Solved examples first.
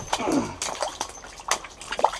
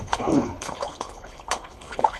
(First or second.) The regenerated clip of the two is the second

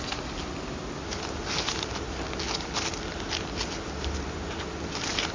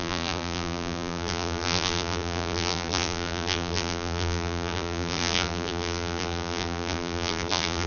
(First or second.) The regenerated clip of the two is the second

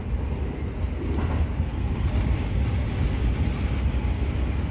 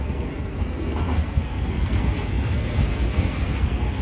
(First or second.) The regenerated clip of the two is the second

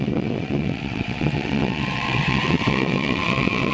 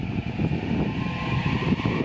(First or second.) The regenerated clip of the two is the first